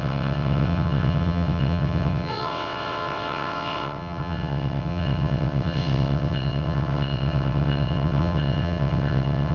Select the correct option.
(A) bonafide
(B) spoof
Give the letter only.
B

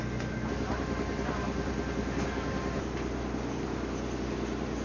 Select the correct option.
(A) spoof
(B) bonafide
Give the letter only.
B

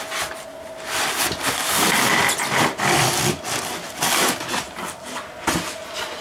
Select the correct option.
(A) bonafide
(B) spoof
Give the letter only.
A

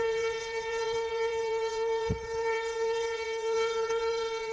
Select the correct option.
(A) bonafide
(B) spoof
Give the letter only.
B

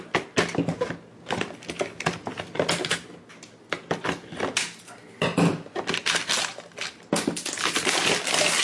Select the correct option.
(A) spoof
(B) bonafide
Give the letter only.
B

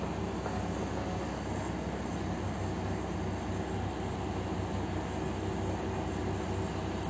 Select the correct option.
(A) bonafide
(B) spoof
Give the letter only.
A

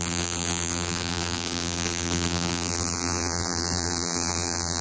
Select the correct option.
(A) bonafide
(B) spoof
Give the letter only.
B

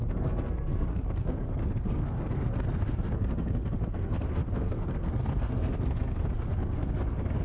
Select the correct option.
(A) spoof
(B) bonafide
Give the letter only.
A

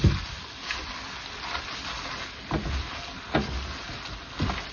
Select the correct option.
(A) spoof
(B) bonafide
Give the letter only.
B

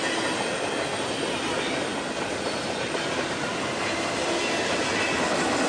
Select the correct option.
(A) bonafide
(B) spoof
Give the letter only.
A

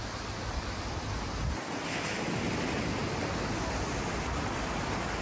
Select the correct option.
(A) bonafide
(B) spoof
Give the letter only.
A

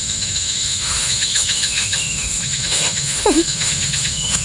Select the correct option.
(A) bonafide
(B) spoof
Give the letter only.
B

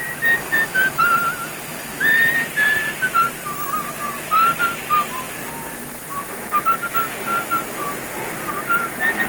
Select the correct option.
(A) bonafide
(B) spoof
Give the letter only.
B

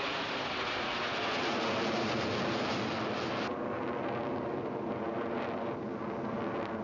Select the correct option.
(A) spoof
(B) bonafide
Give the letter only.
B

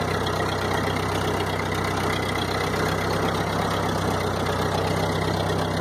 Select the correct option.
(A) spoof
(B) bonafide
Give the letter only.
B